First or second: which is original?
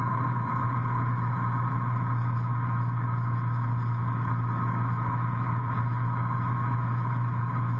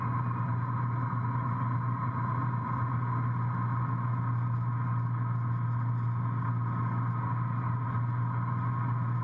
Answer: second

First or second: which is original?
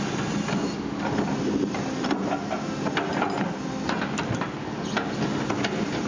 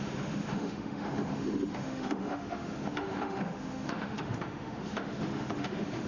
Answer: first